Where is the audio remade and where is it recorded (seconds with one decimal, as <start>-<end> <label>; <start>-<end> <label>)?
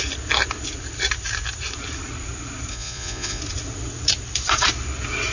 0.0-2.7 recorded; 2.7-3.4 remade; 3.4-5.3 recorded